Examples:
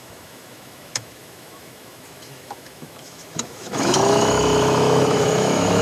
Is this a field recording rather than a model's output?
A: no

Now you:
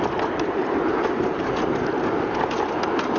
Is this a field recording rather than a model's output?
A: yes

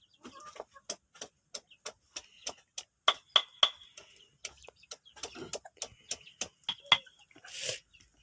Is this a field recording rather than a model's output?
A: yes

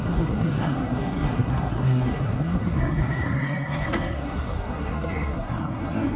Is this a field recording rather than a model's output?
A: no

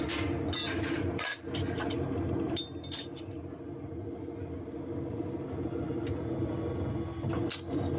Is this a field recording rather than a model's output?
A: yes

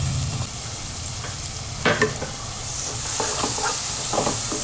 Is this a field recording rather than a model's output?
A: no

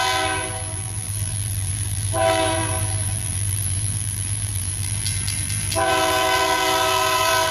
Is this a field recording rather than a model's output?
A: no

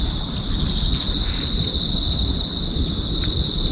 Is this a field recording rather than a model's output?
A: yes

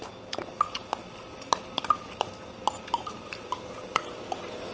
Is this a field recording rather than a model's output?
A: yes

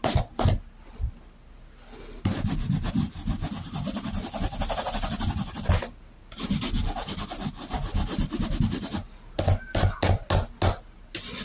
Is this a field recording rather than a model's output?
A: yes